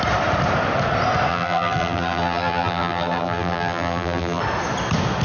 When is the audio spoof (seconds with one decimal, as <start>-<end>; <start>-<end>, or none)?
1.3-4.4